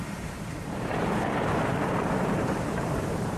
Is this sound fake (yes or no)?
yes